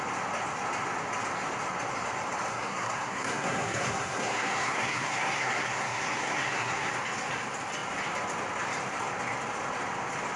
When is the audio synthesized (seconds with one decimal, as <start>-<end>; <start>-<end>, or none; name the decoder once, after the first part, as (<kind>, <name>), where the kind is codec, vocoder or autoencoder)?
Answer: 2.5-6.9 (codec, SNAC)